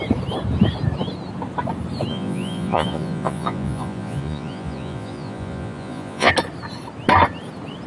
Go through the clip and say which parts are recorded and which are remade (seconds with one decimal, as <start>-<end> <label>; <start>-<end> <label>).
0.0-2.1 recorded; 2.1-6.3 remade; 6.3-7.9 recorded